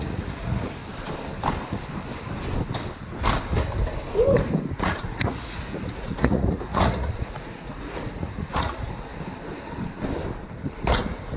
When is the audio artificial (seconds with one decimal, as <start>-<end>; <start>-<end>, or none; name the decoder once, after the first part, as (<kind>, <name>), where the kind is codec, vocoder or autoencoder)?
0.0-0.8 (vocoder, Vocos); 4.7-9.1; 11.0-11.4